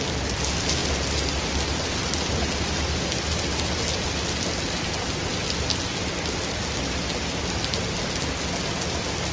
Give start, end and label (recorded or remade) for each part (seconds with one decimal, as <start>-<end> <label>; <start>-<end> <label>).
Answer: 0.0-9.3 recorded